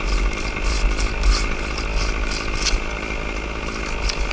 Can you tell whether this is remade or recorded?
recorded